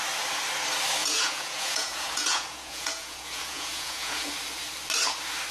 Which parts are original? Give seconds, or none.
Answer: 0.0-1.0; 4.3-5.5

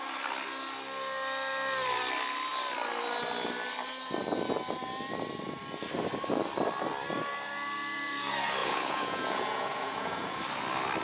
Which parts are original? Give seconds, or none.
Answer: 0.0-8.6; 10.4-11.0

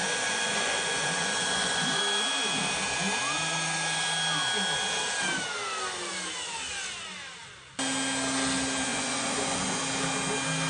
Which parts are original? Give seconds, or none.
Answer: 2.0-8.9; 9.8-10.7